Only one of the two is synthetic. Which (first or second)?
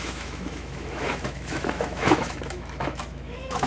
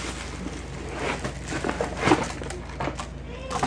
first